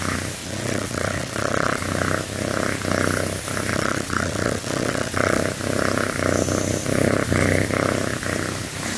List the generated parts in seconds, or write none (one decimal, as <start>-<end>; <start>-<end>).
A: 0.4-1.8; 3.7-5.4